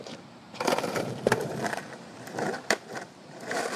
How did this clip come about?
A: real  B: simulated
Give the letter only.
B